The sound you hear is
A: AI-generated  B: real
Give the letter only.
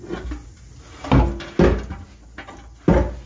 B